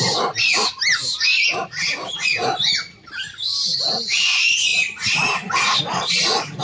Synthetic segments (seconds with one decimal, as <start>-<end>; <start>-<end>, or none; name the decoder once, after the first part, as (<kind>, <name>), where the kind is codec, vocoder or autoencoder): none